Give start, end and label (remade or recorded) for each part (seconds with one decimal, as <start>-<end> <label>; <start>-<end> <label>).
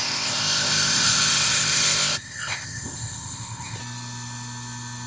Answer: 0.0-3.8 remade; 3.8-5.1 recorded